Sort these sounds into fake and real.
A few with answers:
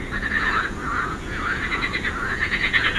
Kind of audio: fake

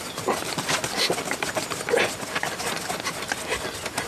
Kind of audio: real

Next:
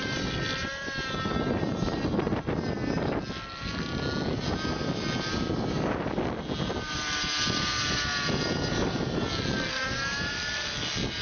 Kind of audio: real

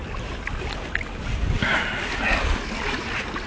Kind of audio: real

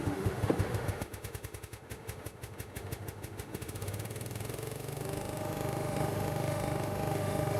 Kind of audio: fake